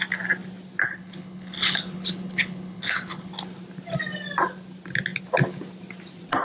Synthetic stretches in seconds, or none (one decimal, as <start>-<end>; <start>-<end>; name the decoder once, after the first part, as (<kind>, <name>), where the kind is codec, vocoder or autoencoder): 0.8-3.3 (codec, HILCodec)